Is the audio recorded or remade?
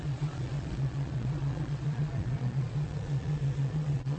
remade